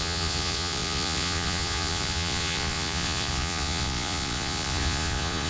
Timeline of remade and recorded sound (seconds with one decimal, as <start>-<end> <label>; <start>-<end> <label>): 0.0-5.5 remade